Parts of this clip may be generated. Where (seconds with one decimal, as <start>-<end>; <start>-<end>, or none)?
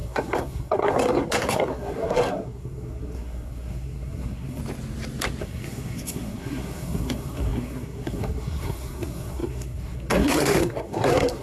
0.0-4.6; 5.4-11.4